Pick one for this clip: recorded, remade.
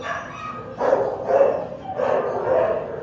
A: recorded